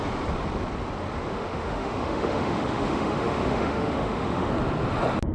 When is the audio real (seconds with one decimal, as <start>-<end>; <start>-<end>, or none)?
0.0-1.3; 4.5-5.3